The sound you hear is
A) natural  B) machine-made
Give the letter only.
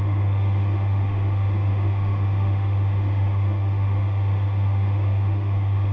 B